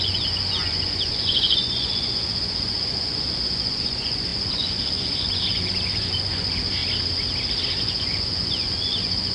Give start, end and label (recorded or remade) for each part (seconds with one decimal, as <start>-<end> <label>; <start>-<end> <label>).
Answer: 0.0-6.8 remade; 6.8-7.8 recorded; 7.8-9.3 remade